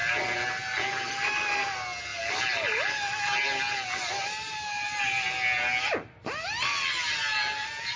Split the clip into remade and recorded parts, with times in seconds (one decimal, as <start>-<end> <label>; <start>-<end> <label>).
0.0-8.0 recorded